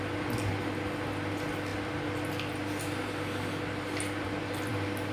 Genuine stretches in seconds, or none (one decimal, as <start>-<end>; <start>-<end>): 0.0-5.1

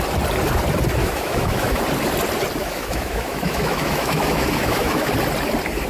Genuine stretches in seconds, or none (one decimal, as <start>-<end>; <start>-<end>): 0.0-1.0; 1.8-2.6; 5.1-5.9

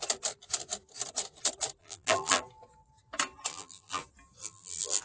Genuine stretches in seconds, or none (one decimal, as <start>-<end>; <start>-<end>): 0.0-1.8; 2.4-3.5; 4.0-4.4

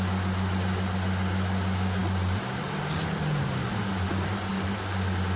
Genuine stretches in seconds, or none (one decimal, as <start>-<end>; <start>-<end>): 0.0-5.4